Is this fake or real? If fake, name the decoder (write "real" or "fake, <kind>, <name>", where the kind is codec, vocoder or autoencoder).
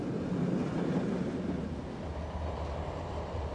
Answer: real